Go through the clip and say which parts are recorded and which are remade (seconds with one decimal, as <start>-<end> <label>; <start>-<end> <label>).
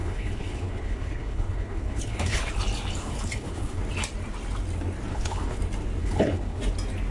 0.0-2.5 remade; 2.5-3.0 recorded; 3.0-3.8 remade; 3.8-5.1 recorded; 5.1-5.6 remade; 5.6-6.0 recorded; 6.0-6.6 remade; 6.6-7.1 recorded